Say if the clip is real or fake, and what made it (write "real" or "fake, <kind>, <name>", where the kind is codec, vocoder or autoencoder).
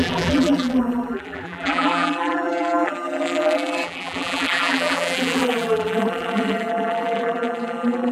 fake, vocoder, BigVGAN v2